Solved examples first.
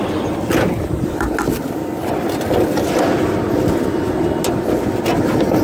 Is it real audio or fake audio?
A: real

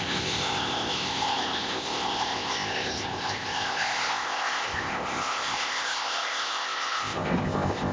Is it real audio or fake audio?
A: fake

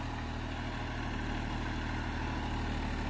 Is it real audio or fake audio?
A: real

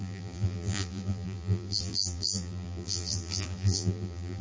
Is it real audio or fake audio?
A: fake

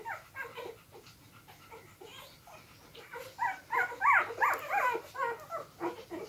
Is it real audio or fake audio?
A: real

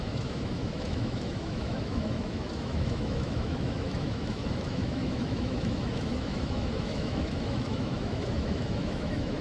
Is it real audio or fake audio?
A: fake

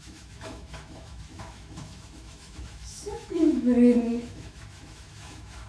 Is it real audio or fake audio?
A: fake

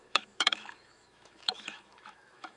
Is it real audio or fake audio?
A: fake